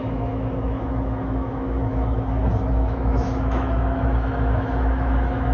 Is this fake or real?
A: fake